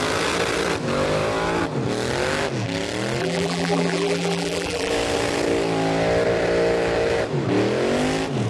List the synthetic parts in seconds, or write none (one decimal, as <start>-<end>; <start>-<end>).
3.2-4.9